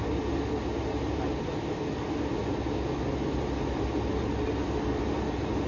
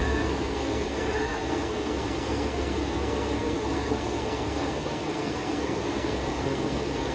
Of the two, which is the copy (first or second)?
second